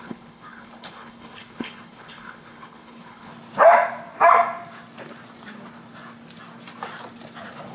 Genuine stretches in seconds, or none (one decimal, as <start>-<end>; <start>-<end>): 3.3-7.7